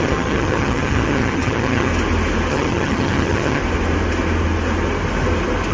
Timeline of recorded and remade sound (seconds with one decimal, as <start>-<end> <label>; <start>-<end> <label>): 0.0-1.9 remade; 1.9-2.5 recorded; 2.5-3.6 remade; 3.6-5.7 recorded